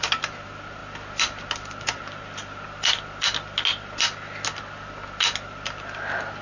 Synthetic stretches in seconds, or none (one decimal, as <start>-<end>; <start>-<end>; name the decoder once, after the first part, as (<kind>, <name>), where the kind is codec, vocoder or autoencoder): none